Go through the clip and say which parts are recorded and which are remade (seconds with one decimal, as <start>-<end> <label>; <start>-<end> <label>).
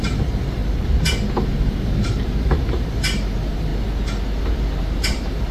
0.0-0.6 remade; 0.6-1.4 recorded; 1.4-3.7 remade; 3.7-4.8 recorded; 4.8-5.5 remade